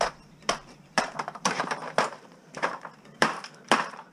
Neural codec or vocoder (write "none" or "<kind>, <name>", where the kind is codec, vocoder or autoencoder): vocoder, BigVGAN v2